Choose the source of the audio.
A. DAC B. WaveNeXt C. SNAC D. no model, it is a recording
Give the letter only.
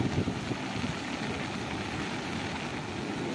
D